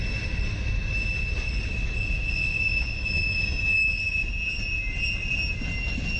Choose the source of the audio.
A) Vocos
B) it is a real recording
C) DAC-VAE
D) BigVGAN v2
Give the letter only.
B